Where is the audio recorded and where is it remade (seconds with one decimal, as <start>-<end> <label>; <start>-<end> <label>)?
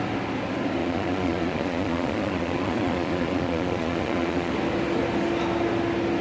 0.0-0.8 recorded; 0.8-4.5 remade; 4.5-6.2 recorded